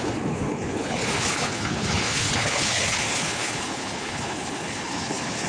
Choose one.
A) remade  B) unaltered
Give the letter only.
A